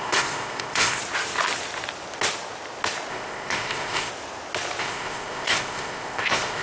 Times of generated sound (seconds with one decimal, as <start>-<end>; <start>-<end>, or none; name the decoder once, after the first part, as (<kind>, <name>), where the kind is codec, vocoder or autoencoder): 0.0-1.0 (codec, ZipCodec); 3.1-4.1; 4.8-6.6